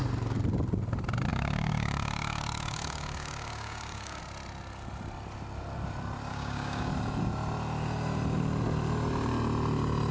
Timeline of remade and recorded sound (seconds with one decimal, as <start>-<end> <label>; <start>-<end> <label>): 0.0-1.3 recorded; 1.3-4.2 remade; 4.2-6.3 recorded; 6.3-6.9 remade; 6.9-10.1 recorded